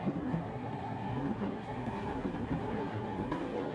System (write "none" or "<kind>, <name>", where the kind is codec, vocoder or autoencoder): codec, SNAC